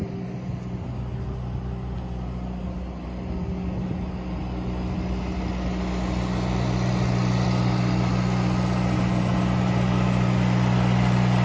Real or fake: real